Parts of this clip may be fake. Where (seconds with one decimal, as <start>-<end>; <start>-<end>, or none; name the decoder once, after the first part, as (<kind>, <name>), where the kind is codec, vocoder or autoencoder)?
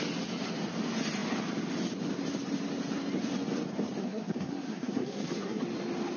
4.0-5.6 (codec, SNAC)